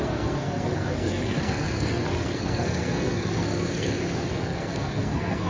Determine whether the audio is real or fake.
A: fake